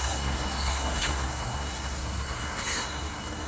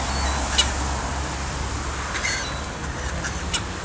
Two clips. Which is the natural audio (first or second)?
second